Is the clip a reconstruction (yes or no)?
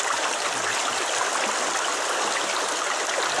no